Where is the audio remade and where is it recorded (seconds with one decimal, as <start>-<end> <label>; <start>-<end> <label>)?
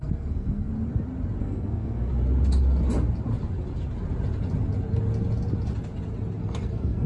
0.0-0.7 remade; 0.7-1.4 recorded; 1.4-2.1 remade; 2.1-6.4 recorded; 6.4-7.1 remade